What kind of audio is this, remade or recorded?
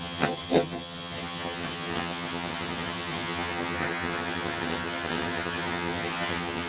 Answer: remade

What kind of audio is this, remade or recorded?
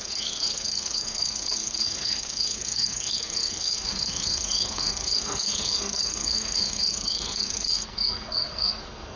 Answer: remade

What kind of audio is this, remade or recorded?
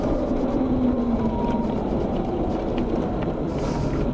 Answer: recorded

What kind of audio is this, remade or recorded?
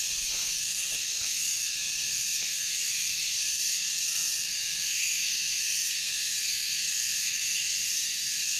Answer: remade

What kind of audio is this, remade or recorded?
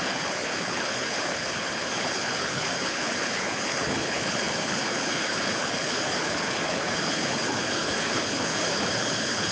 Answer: remade